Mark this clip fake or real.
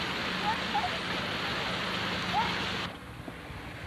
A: real